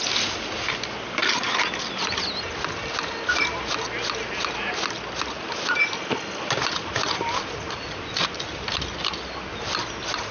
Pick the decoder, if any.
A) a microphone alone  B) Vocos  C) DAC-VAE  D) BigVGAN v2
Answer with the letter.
A